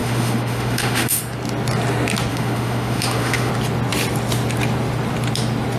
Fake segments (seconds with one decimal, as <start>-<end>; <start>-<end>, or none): 0.0-1.2; 2.3-3.5